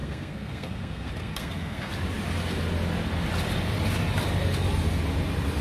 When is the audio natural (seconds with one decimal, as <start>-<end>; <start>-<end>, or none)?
1.9-5.6